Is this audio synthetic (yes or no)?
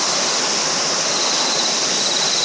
no